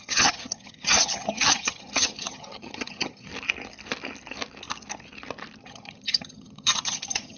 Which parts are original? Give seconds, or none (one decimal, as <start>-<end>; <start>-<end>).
3.3-5.6